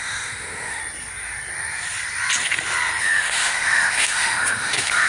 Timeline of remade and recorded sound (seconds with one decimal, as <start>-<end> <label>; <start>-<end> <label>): 0.0-0.8 remade; 0.8-3.0 recorded; 3.0-5.1 remade